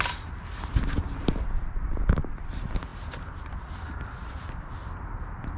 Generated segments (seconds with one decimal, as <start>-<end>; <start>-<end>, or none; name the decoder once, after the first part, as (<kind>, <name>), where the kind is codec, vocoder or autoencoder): none